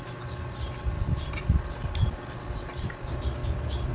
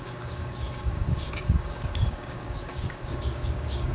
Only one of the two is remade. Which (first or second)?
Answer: second